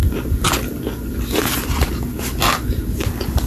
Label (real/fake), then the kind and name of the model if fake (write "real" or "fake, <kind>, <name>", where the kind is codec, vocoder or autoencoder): real